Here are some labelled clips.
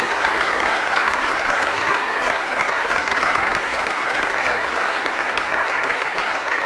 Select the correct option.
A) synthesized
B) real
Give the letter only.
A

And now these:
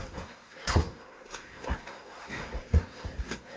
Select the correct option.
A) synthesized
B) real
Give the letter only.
A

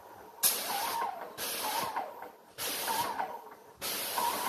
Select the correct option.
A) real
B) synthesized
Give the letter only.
A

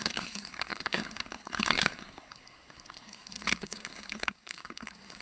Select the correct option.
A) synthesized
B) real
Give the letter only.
A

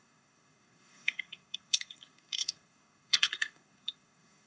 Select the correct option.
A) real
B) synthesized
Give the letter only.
B